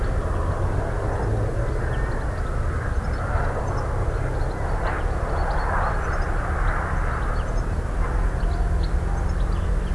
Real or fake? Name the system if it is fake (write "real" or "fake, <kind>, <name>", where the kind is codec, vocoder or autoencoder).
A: real